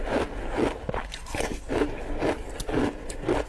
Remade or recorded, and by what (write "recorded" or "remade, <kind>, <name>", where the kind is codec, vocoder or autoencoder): recorded